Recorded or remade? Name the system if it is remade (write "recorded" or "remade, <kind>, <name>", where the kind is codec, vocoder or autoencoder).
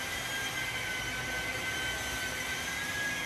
recorded